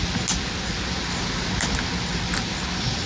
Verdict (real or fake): real